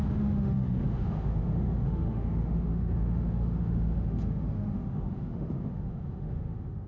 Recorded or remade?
remade